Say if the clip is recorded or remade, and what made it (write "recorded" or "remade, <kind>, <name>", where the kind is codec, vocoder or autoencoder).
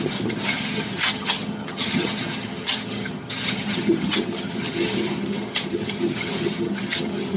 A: remade, vocoder, HiFi-GAN